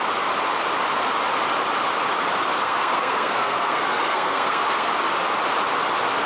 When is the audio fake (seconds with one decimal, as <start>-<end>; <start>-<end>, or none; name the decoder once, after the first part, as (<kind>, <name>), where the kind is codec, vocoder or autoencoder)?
2.6-4.9 (codec, SNAC)